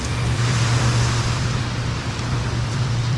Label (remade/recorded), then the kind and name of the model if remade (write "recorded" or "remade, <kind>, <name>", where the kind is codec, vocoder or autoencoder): remade, vocoder, BigVGAN v2